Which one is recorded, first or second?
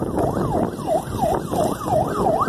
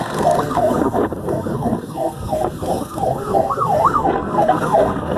first